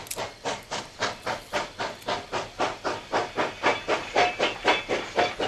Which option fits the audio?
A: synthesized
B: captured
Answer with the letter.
B